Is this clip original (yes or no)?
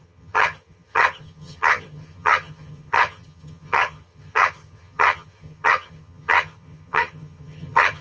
no